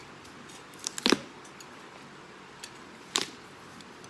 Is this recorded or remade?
remade